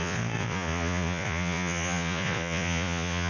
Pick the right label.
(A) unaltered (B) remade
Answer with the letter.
B